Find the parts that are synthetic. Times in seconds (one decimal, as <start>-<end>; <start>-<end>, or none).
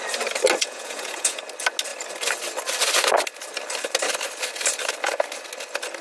0.6-1.4